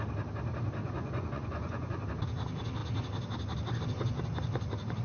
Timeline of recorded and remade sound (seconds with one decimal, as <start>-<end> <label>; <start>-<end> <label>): 0.0-0.8 recorded; 0.8-2.0 remade; 2.0-5.0 recorded